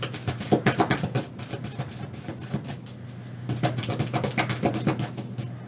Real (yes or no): yes